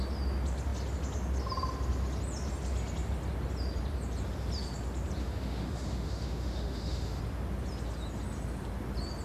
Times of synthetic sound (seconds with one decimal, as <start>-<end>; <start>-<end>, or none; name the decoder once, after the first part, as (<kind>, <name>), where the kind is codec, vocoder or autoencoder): 5.2-7.2 (autoencoder, DAC-VAE)